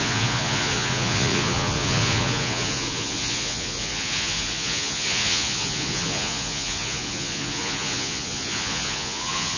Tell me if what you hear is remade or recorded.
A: remade